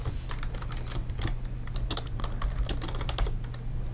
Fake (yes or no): no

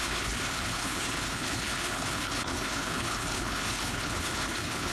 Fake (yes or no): yes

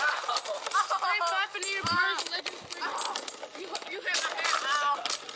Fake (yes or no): no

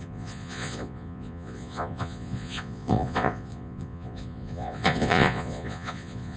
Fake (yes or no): yes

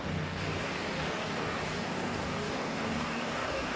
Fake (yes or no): yes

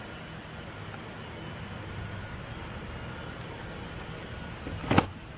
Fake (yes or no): no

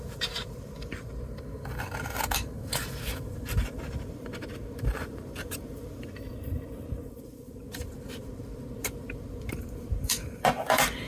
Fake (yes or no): yes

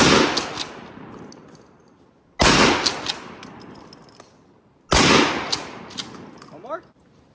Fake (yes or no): no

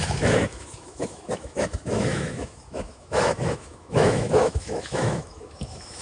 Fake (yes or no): yes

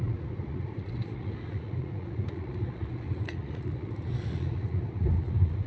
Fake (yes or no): yes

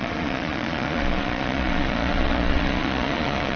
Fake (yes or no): yes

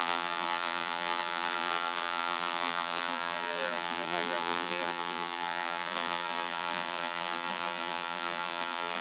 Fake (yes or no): yes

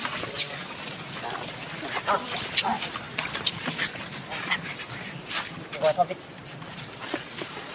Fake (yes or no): no